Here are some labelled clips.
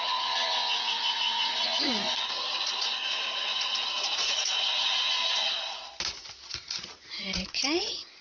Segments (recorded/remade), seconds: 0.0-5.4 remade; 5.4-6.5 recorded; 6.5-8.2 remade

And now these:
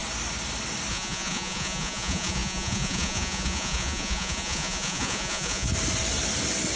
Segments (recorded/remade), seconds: 0.0-0.9 recorded; 0.9-5.7 remade; 5.7-6.8 recorded

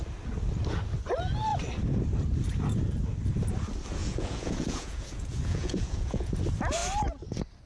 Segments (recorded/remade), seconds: 0.0-4.0 recorded; 4.0-6.3 remade; 6.3-7.7 recorded

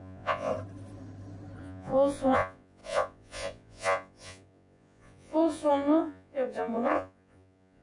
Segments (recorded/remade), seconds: 0.0-0.5 remade; 0.5-1.6 recorded; 1.6-7.8 remade

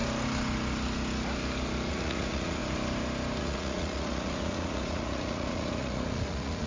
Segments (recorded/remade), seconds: 0.0-1.9 recorded; 1.9-2.6 remade; 2.6-3.4 recorded; 3.4-6.7 remade